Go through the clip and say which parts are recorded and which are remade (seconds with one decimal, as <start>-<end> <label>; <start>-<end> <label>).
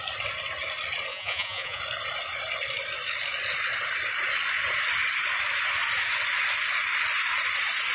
0.0-1.1 recorded; 1.1-1.8 remade; 1.8-7.9 recorded